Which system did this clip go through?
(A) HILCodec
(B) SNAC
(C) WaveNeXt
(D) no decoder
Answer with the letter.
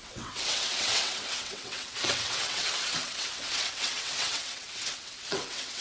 C